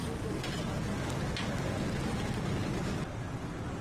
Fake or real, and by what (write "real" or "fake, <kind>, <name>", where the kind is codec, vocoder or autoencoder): real